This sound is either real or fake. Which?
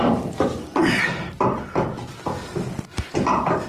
real